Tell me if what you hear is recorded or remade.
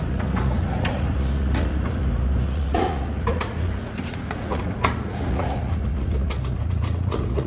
remade